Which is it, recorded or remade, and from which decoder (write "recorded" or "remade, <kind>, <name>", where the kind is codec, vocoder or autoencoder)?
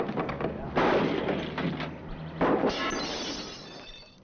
recorded